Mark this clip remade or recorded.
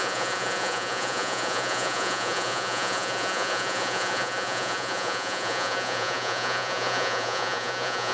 remade